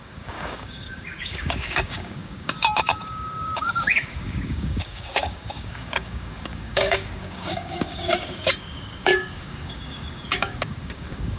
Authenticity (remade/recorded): remade